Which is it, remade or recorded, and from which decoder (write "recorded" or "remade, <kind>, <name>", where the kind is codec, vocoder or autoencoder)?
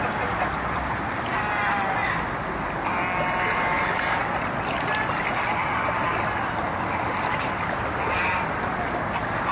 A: recorded